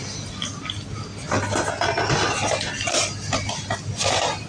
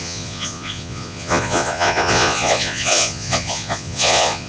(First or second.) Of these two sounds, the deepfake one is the second